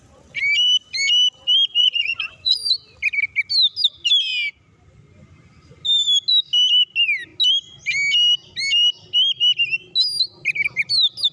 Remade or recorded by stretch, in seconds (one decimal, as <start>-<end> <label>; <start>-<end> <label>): 0.0-1.8 recorded; 1.8-2.6 remade; 2.6-11.3 recorded